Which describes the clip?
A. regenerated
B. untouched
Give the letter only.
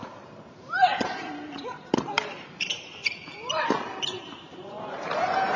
A